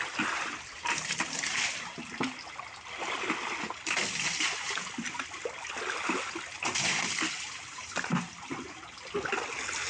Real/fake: real